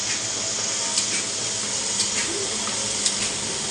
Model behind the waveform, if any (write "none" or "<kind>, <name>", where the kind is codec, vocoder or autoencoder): none